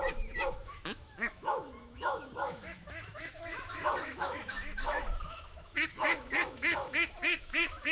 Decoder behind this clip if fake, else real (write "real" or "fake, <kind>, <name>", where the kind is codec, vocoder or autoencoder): fake, autoencoder, DAC-VAE